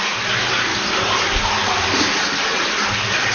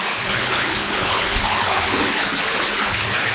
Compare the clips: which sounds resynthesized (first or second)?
second